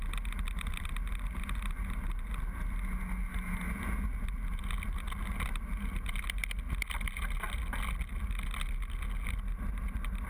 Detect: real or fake real